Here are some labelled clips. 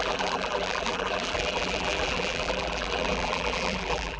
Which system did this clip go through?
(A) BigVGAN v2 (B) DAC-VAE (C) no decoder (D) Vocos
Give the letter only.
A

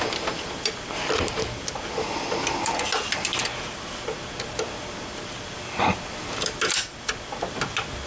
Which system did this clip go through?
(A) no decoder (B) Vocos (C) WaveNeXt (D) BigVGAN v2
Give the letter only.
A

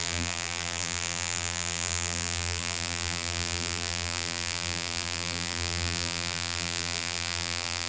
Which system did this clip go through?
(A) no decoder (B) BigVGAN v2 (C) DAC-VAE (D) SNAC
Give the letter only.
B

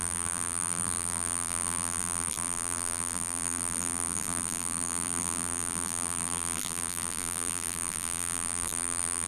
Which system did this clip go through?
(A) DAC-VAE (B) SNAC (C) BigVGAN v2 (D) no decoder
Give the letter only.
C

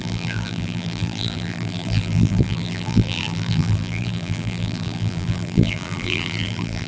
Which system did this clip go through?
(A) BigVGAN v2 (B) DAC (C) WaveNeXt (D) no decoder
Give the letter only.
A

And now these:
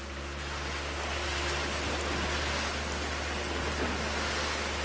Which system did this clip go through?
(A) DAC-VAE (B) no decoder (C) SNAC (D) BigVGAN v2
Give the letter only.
B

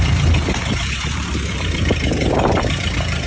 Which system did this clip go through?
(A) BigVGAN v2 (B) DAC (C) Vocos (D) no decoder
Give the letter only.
A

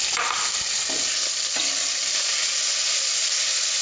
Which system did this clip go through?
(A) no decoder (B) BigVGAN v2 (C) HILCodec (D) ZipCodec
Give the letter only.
A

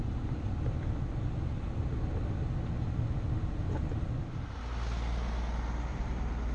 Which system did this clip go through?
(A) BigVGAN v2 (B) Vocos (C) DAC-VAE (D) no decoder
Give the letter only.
D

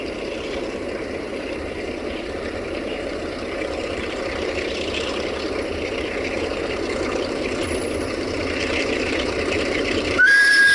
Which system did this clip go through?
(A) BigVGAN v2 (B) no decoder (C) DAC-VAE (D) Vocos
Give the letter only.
A